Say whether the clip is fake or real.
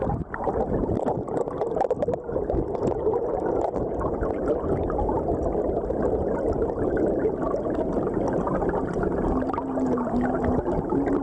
real